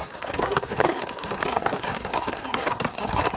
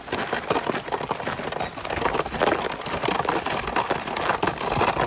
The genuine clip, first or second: second